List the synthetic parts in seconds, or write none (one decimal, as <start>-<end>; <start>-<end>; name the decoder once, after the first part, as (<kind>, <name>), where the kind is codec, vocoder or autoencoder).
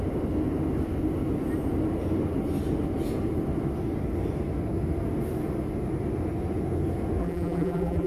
7.2-8.1 (vocoder, BigVGAN v2)